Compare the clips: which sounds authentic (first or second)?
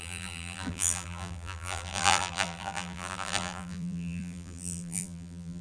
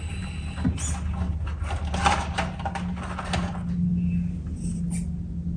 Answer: second